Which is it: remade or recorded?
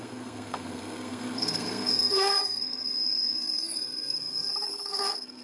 remade